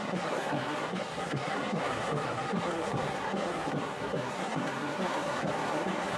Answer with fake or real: fake